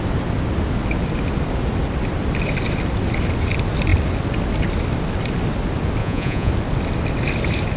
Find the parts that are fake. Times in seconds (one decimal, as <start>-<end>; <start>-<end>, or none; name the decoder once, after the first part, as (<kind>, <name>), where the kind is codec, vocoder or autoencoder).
6.0-6.5 (vocoder, Vocos)